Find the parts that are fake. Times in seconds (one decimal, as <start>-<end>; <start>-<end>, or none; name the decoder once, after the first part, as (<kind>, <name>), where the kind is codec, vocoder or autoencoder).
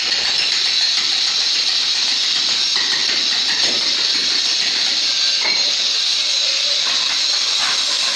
none